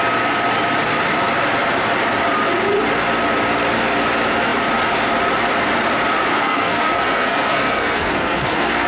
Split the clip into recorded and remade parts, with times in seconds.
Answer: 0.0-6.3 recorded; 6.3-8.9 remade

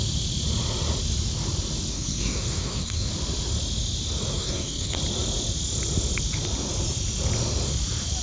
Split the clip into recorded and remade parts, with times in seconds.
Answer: 0.0-1.9 recorded; 1.9-3.1 remade; 3.1-4.3 recorded; 4.3-5.0 remade; 5.0-8.2 recorded